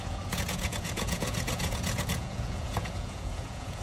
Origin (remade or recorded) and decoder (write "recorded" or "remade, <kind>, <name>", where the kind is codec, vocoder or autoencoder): remade, vocoder, Vocos